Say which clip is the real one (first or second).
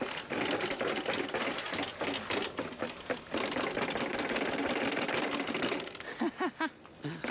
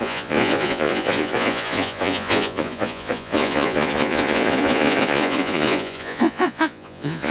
first